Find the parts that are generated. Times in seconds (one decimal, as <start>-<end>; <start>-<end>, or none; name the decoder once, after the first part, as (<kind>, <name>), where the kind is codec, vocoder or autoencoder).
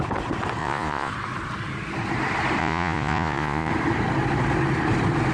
0.6-1.1 (vocoder, Vocos); 2.6-3.7